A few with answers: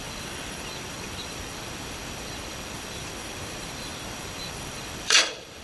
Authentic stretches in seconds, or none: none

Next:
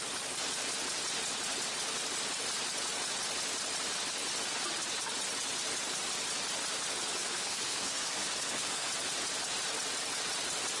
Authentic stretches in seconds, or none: 0.0-7.2; 8.9-10.8

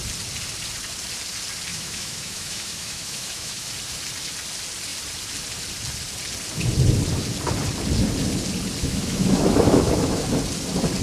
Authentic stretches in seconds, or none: 0.0-1.7; 3.7-8.8; 10.2-11.0

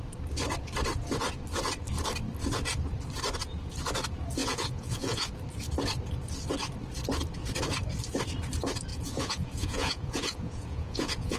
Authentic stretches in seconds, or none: 0.0-4.4; 5.3-8.9